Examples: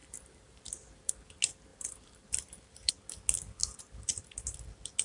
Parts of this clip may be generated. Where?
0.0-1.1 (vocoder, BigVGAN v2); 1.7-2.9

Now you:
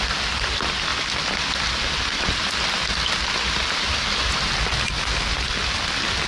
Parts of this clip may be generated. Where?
none

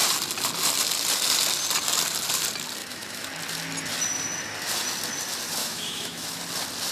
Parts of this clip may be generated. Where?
2.8-3.3 (autoencoder, DAC-VAE); 5.6-6.4